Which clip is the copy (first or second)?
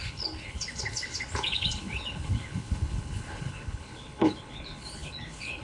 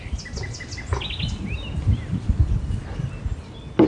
first